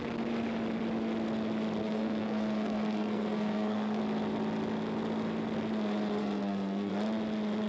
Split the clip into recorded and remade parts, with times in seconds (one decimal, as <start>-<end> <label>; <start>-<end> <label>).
0.0-1.8 recorded; 1.8-4.0 remade; 4.0-6.2 recorded; 6.2-6.9 remade; 6.9-7.7 recorded